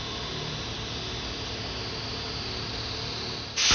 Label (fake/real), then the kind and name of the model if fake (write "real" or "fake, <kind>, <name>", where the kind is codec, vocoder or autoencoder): real